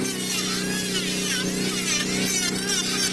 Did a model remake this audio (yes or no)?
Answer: no